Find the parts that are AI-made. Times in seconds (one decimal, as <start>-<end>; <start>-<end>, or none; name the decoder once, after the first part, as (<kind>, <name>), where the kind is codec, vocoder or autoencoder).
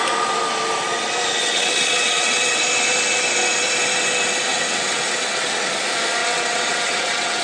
1.4-2.6 (vocoder, WaveNeXt); 4.5-5.7; 6.2-7.4